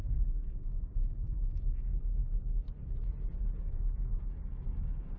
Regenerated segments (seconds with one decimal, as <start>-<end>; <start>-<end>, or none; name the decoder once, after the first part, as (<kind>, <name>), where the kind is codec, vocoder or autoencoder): 0.0-2.2 (codec, DAC); 3.6-5.2